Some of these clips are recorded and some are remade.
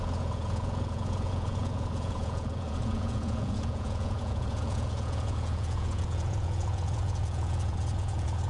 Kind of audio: remade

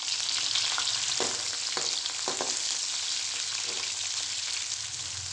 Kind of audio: recorded